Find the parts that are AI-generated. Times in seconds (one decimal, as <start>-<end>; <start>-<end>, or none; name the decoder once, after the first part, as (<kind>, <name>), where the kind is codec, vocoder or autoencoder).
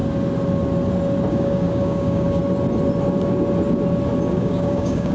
1.3-2.4 (codec, DAC); 4.3-5.1